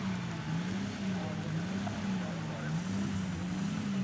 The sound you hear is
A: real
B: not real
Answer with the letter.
A